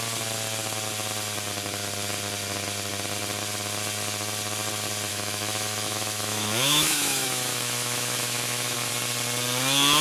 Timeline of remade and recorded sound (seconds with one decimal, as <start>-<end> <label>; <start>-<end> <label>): 0.0-5.1 recorded; 5.1-8.9 remade; 8.9-10.0 recorded